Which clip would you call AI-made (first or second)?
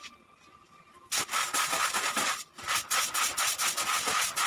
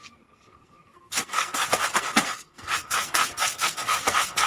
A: second